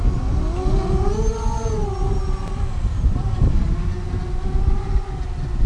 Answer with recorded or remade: recorded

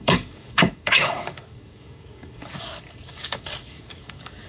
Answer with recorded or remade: remade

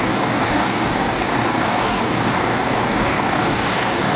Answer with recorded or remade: remade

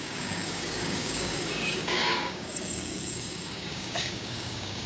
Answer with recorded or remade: remade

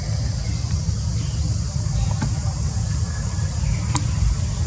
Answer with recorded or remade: recorded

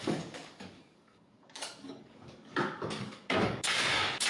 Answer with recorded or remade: remade